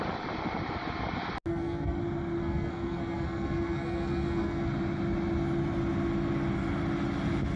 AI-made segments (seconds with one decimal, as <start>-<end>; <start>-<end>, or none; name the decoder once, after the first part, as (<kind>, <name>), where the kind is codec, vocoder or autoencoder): 1.5-2.0 (codec, SNAC); 2.4-4.7